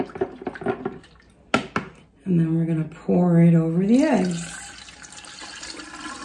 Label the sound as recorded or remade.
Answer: recorded